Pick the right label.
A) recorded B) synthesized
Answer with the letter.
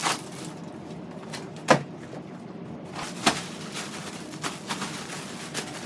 A